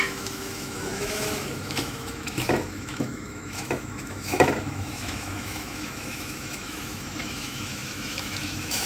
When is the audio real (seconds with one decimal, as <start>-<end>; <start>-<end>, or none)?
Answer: none